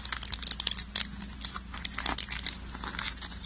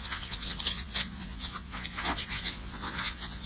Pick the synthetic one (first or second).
second